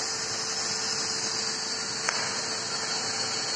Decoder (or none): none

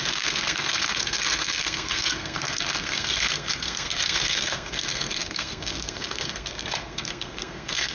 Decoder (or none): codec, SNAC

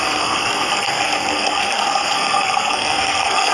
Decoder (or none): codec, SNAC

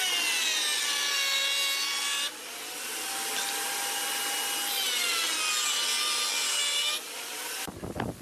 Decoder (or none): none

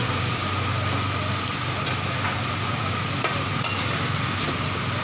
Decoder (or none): none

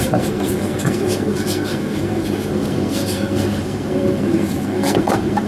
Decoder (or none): codec, SNAC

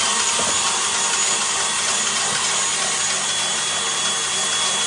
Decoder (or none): none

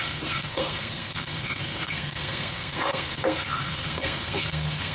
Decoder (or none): codec, SNAC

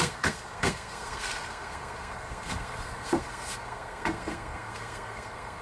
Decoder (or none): codec, SNAC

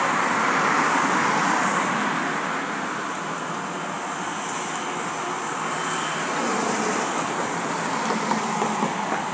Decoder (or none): none